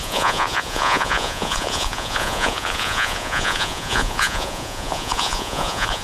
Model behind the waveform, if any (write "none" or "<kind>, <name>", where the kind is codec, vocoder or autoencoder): vocoder, Vocos